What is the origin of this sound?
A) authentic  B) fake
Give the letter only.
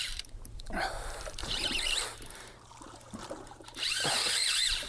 B